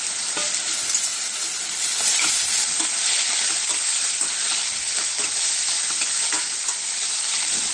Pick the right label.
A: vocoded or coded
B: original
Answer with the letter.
B